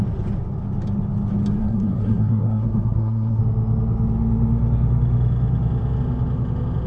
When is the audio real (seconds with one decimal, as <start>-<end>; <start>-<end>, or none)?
0.0-1.6; 3.4-6.9

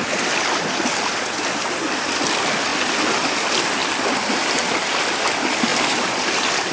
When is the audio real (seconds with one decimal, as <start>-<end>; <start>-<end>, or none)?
0.0-6.7

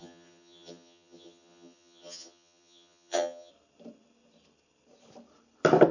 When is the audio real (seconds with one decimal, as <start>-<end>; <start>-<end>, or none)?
3.5-5.9

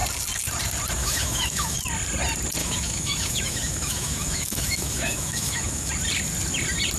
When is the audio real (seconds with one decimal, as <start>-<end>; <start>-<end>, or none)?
0.0-1.0; 1.8-2.6; 5.9-7.0

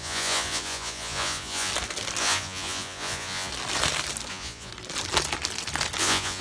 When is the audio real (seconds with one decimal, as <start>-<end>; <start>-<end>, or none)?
1.7-2.2; 3.5-4.3; 4.7-6.0

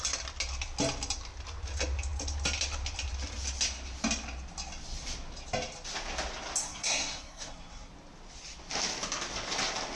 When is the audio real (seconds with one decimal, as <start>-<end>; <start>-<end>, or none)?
0.0-6.6; 7.9-10.0